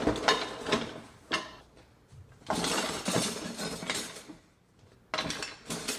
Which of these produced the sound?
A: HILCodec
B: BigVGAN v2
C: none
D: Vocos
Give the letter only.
C